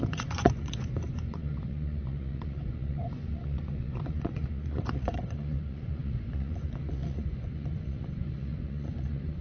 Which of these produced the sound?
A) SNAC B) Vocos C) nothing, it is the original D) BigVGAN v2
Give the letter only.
B